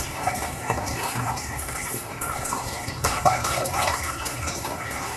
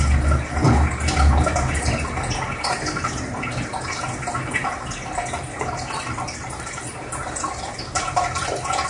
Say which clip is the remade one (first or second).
first